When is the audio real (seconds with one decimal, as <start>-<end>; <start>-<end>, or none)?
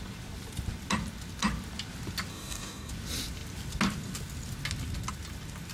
0.0-2.3; 2.9-5.7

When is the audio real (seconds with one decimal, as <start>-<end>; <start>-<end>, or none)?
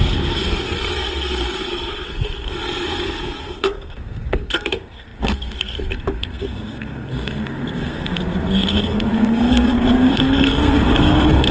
none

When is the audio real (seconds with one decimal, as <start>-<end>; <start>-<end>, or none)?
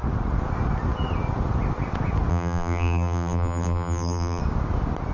0.0-2.3; 4.4-5.1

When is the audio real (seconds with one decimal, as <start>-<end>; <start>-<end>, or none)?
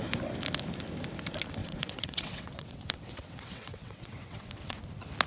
0.0-1.6; 4.8-5.3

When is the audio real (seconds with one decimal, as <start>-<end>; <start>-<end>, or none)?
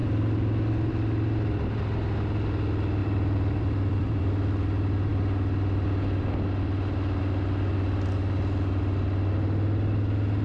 0.0-3.0; 4.3-10.4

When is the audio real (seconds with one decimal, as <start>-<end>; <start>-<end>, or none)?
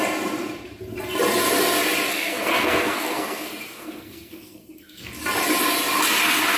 0.0-2.1; 5.1-6.6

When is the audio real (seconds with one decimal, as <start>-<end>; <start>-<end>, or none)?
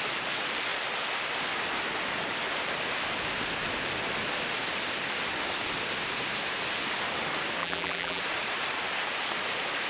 0.0-7.6; 8.2-9.9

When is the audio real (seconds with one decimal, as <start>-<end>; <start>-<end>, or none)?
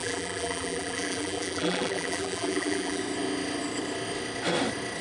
3.0-5.0